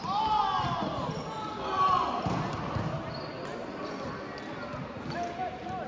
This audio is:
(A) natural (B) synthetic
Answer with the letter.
A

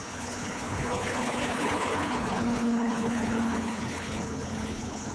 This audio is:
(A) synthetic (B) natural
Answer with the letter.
A